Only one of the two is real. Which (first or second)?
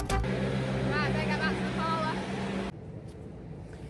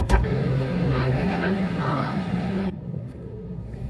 first